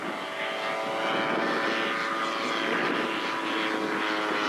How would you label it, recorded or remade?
recorded